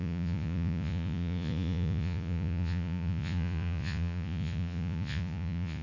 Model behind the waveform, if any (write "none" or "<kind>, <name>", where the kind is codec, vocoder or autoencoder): vocoder, Vocos